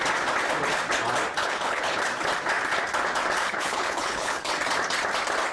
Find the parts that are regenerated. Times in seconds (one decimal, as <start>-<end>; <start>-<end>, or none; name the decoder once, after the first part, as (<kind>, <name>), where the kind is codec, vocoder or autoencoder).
1.4-2.0 (codec, HILCodec); 3.4-4.5

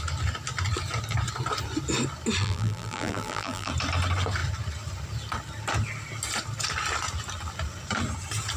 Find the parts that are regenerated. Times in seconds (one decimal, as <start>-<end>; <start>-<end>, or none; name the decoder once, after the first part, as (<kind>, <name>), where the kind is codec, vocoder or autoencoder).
2.4-3.7 (vocoder, BigVGAN v2)